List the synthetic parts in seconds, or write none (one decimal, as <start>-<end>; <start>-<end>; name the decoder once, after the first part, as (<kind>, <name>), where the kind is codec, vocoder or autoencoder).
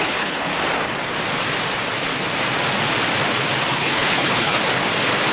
0.0-0.5 (codec, HILCodec); 3.7-4.6